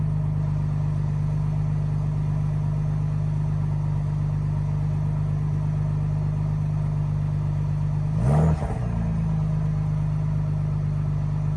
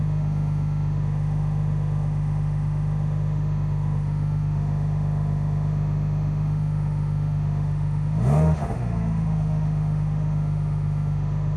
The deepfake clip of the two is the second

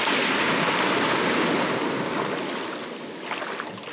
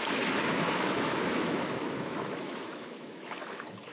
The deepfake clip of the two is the second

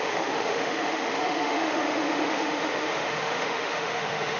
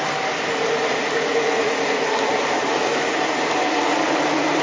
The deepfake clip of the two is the first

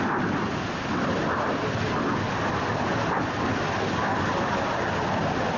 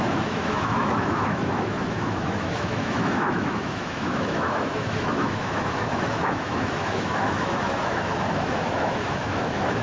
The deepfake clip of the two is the second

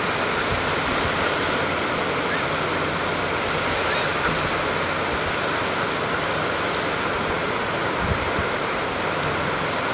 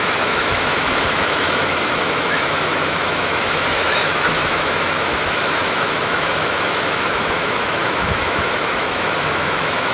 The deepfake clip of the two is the second